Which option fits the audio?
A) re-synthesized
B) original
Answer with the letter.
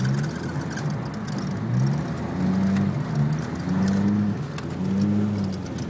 B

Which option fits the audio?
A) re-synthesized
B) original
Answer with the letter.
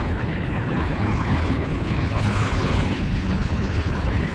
A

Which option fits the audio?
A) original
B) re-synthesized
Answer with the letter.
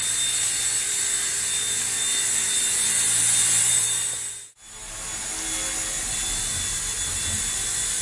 A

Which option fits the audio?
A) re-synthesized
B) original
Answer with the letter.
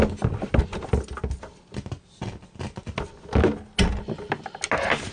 B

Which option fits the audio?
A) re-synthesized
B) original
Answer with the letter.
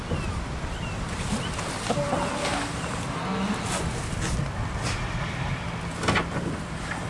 B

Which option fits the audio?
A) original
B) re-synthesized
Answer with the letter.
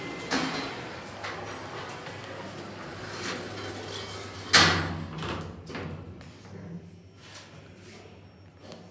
A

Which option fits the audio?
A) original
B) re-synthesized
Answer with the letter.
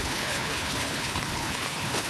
B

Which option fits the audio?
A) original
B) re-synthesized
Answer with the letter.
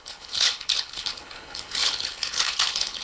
B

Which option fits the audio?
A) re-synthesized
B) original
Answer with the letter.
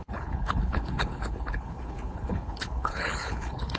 A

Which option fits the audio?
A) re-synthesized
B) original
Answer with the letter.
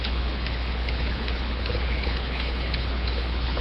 A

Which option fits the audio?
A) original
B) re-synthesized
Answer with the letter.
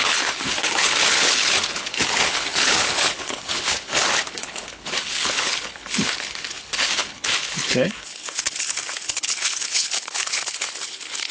B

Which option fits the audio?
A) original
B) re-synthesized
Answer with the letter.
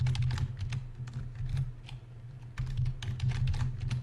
A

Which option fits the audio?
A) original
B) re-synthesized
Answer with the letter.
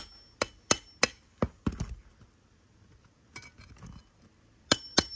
A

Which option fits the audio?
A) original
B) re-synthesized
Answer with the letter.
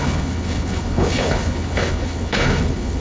B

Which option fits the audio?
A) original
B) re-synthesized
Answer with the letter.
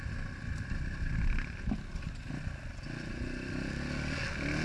A